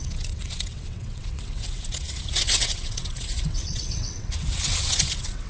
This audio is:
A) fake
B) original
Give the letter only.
A